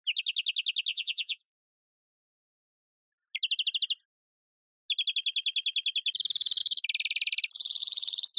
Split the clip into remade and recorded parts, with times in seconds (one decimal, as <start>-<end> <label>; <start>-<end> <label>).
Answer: 0.0-0.9 recorded; 0.9-2.0 remade; 2.0-8.4 recorded